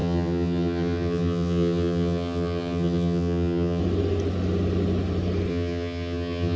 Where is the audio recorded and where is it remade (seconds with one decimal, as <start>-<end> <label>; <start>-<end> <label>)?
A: 0.0-3.8 remade; 3.8-5.5 recorded; 5.5-6.6 remade